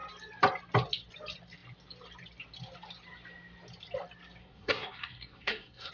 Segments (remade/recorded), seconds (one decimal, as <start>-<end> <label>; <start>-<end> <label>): 0.0-4.4 recorded; 4.4-5.9 remade